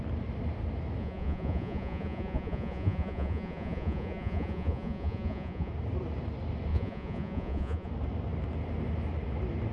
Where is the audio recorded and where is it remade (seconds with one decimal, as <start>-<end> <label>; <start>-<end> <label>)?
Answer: 0.0-1.0 recorded; 1.0-5.7 remade; 5.7-6.7 recorded; 6.7-7.9 remade; 7.9-9.7 recorded